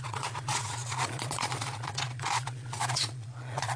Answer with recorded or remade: remade